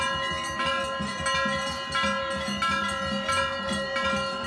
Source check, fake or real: real